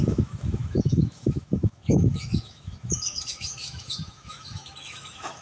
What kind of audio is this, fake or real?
fake